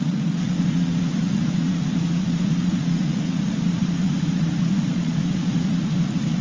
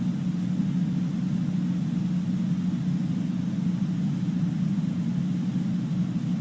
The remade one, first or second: first